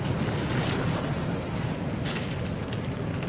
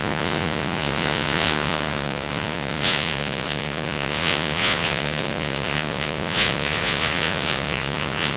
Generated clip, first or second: second